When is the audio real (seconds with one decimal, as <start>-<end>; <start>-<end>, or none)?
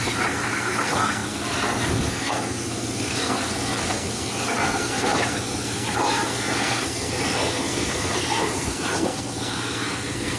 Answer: none